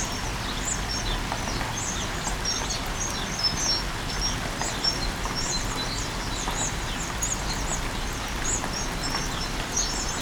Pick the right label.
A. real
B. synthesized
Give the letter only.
A